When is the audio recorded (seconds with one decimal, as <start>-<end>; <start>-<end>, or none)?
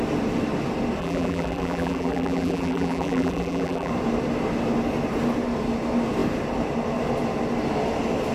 0.0-1.0; 3.9-8.3